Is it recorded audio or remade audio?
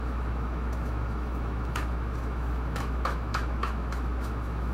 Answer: remade